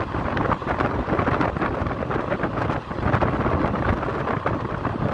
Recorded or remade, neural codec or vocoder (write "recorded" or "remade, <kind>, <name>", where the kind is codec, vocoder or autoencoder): recorded